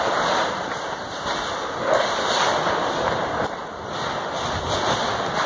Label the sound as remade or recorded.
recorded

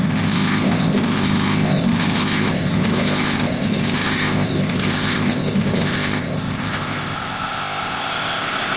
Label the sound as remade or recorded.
remade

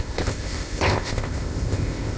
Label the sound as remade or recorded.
remade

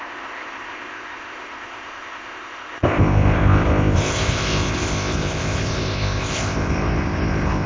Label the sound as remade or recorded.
remade